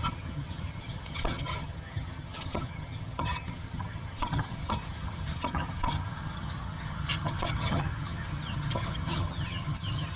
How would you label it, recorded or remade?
remade